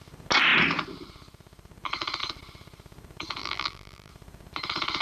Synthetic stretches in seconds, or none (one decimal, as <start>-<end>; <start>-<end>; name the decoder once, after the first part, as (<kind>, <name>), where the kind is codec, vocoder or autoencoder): 3.4-4.1 (vocoder, BigVGAN v2)